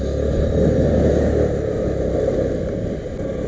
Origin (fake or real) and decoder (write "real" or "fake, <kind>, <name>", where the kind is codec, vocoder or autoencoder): real